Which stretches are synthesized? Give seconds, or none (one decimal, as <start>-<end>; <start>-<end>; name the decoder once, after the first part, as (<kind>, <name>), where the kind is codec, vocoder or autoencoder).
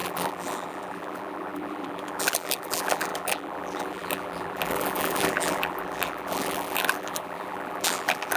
0.0-8.4 (vocoder, BigVGAN v2)